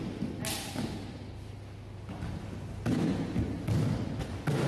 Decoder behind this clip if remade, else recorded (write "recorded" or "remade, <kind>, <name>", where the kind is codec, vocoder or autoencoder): recorded